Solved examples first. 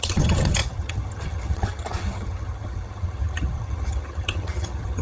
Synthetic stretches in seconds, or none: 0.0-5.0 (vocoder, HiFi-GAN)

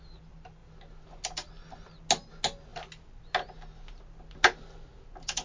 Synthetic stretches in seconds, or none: none

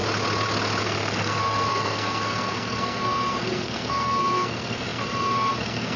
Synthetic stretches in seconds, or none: 0.8-6.0 (codec, SNAC)

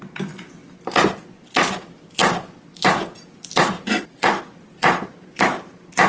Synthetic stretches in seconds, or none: none

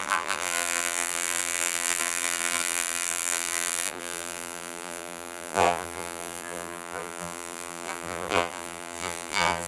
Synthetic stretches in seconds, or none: 0.0-9.7 (vocoder, BigVGAN v2)

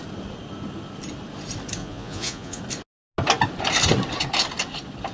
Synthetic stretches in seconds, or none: 1.8-2.6 (vocoder, Vocos)

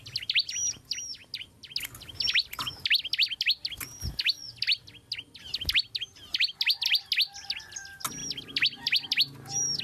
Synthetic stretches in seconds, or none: none